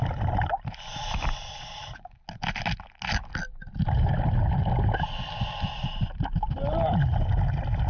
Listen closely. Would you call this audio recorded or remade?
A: recorded